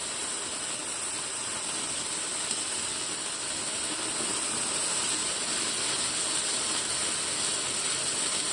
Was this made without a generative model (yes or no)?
yes